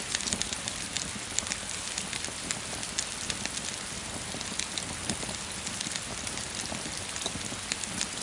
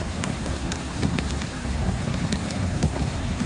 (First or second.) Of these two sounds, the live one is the first